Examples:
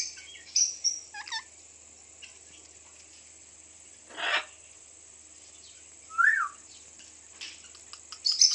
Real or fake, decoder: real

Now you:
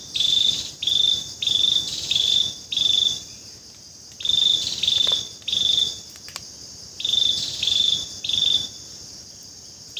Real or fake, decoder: real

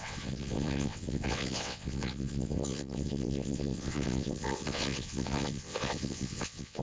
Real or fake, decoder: fake, vocoder, WaveNeXt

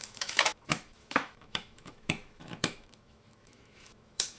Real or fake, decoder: fake, autoencoder, DAC-VAE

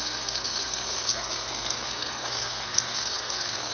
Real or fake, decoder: fake, codec, SNAC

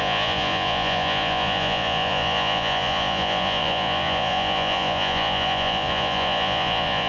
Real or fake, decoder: fake, vocoder, Vocos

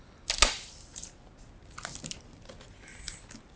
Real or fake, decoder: real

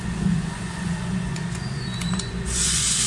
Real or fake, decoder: fake, vocoder, Vocos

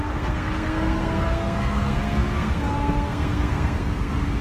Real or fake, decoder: fake, codec, SNAC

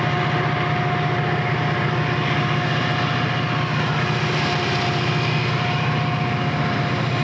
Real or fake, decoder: real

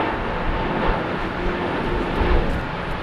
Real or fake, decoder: real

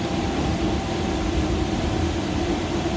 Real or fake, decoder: real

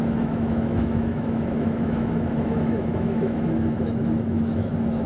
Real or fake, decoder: fake, autoencoder, DAC-VAE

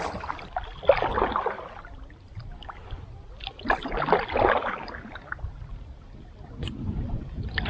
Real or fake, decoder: real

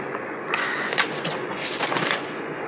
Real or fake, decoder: fake, vocoder, Vocos